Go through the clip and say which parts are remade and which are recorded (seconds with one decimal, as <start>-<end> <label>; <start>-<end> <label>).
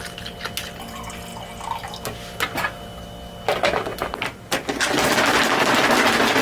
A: 0.0-6.4 recorded